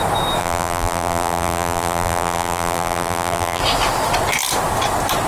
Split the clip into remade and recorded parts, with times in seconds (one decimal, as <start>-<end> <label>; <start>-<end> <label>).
0.0-0.4 recorded; 0.4-3.6 remade; 3.6-5.3 recorded